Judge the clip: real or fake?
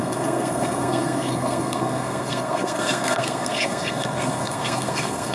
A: fake